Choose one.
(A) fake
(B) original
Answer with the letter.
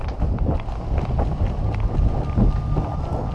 B